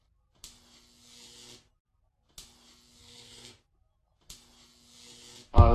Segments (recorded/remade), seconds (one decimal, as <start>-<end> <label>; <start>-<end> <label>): 0.0-3.0 recorded; 3.0-3.6 remade; 3.6-5.7 recorded